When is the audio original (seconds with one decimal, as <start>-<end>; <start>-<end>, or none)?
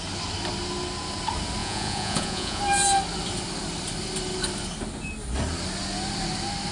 0.0-1.6; 2.6-6.7